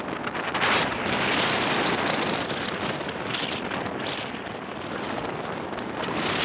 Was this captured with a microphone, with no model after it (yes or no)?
yes